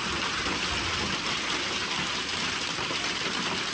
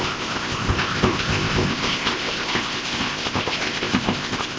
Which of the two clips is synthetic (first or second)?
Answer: second